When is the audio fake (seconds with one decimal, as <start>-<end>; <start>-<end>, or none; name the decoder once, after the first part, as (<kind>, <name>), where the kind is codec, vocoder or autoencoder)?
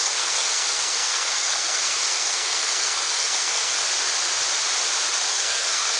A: 0.0-3.8 (codec, SNAC); 5.3-6.0